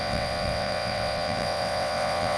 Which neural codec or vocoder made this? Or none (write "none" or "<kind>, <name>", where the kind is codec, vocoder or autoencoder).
vocoder, WaveNeXt